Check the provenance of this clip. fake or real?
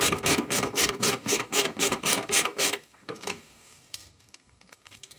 fake